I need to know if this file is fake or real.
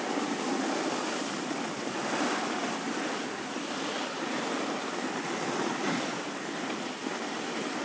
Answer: fake